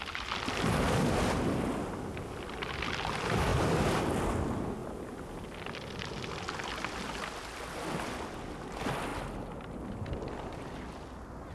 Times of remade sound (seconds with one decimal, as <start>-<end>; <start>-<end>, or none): none